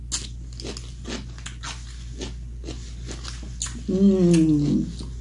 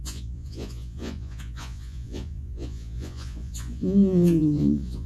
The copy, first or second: second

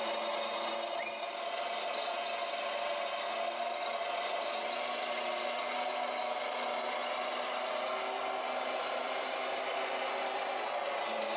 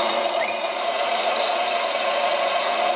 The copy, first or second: second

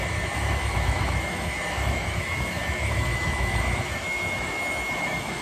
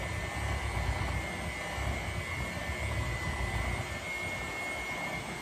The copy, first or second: first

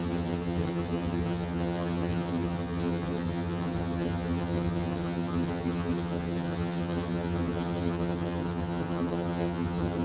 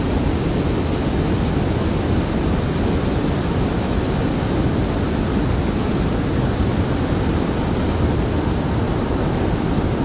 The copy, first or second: first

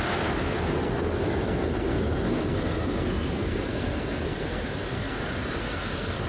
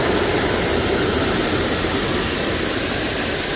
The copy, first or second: first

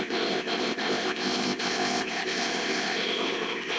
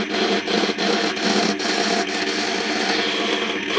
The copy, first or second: first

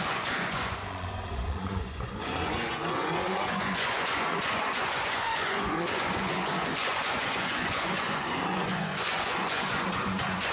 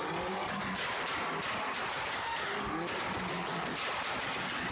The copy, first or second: first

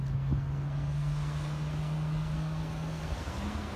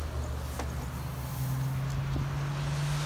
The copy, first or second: first